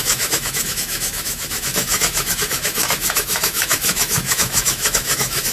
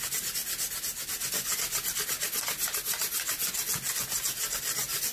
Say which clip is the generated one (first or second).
first